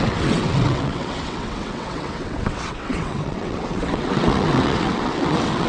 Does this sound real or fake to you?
fake